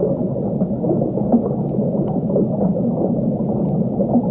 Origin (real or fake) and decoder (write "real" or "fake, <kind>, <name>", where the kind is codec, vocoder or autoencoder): real